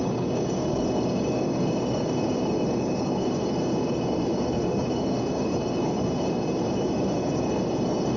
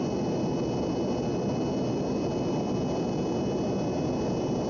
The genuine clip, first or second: second